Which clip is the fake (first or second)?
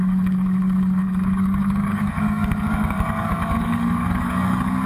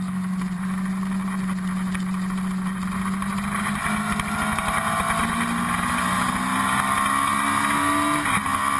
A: first